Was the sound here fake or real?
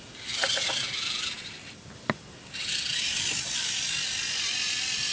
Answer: real